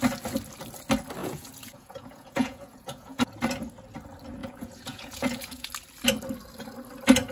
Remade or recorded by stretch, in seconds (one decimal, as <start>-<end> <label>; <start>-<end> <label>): 0.0-1.2 recorded; 1.2-3.3 remade; 3.3-4.4 recorded; 4.4-5.7 remade; 5.7-7.3 recorded